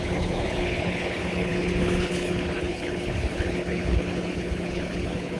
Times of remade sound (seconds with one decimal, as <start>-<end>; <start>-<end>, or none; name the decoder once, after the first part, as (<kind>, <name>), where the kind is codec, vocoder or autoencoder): 0.0-5.4 (codec, HILCodec)